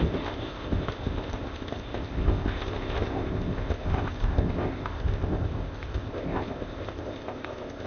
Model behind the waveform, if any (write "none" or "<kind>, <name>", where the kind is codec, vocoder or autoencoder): codec, ZipCodec